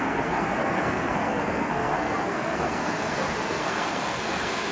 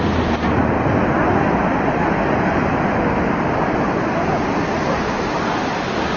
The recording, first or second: second